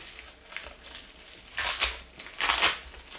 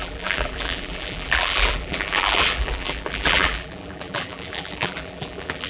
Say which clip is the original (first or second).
first